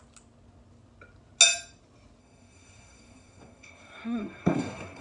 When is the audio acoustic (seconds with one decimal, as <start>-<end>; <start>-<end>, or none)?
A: 0.0-2.2